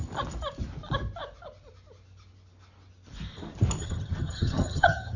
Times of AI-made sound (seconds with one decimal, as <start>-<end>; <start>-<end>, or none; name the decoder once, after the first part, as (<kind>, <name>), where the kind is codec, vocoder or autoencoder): 3.8-5.2 (vocoder, HiFi-GAN)